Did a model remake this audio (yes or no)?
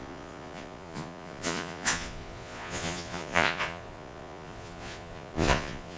yes